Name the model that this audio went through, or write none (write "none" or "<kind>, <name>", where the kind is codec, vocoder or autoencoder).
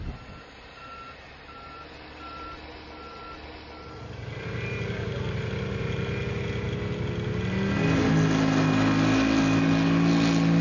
none